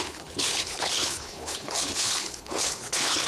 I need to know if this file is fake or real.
fake